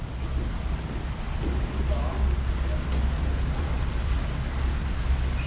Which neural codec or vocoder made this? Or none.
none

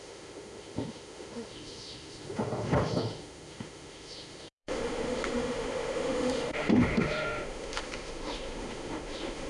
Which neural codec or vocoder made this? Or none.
autoencoder, DAC-VAE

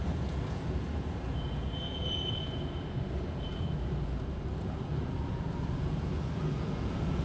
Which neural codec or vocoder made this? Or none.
vocoder, Vocos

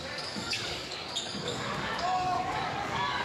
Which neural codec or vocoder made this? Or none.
codec, DAC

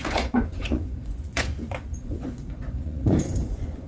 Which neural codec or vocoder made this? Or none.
vocoder, Vocos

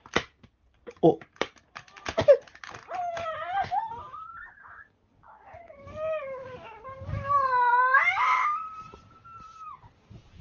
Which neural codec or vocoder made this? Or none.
none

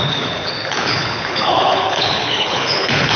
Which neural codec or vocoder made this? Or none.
codec, HILCodec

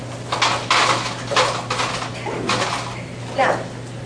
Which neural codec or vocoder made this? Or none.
none